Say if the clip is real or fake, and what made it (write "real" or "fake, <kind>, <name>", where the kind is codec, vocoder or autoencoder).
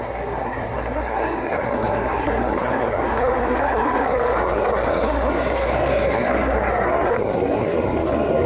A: fake, codec, SNAC